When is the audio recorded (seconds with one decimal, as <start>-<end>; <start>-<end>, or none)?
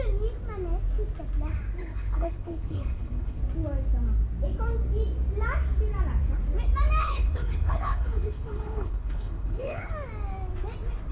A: 0.0-1.8; 3.4-7.0; 9.9-11.1